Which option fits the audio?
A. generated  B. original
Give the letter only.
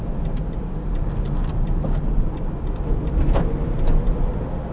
B